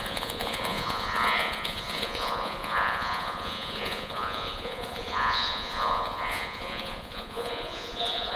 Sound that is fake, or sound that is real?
fake